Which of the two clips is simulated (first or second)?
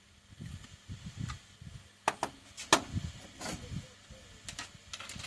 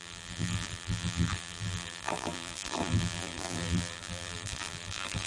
second